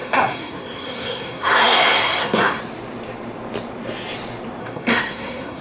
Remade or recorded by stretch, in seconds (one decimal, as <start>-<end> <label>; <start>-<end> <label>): 0.0-2.6 remade; 2.6-4.6 recorded; 4.6-5.6 remade